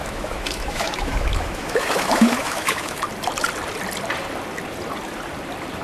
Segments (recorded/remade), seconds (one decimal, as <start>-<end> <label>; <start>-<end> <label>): 0.0-3.0 remade; 3.0-5.8 recorded